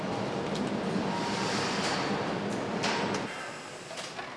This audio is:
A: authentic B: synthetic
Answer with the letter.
A